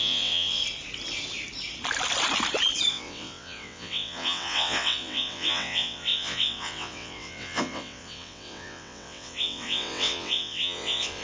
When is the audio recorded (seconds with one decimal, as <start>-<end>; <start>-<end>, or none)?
0.6-2.9